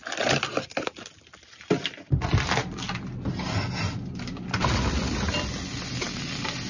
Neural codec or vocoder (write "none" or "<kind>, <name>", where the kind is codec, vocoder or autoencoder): none